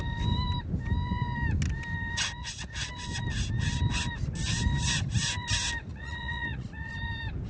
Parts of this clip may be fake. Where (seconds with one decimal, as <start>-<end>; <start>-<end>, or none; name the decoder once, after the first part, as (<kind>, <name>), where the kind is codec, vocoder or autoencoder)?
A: 2.4-2.9 (vocoder, Vocos); 5.9-6.9